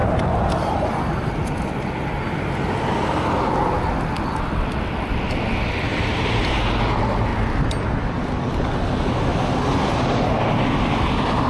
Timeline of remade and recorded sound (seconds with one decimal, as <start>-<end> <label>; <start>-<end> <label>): 0.0-1.3 remade; 1.3-5.9 recorded; 5.9-6.7 remade; 6.7-11.5 recorded